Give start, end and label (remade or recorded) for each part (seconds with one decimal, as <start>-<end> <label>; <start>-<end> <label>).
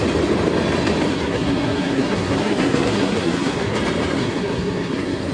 0.0-1.1 recorded; 1.1-3.8 remade; 3.8-4.2 recorded; 4.2-5.3 remade